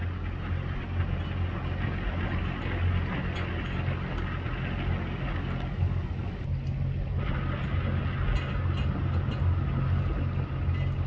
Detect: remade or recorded recorded